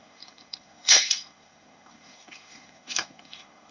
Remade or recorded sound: remade